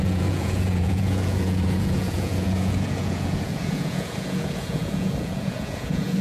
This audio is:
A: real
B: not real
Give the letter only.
B